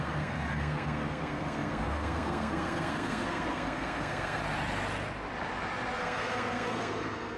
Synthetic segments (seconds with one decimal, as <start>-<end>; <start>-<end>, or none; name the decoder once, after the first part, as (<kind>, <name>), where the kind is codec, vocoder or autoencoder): 0.0-4.4 (codec, SNAC); 6.0-7.4